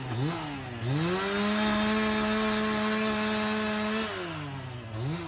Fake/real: real